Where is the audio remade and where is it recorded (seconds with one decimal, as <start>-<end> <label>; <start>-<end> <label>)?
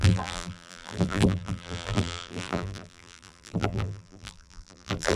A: 0.0-5.2 remade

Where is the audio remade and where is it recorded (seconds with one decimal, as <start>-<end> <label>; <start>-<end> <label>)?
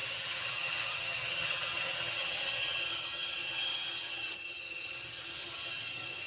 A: 0.0-6.3 remade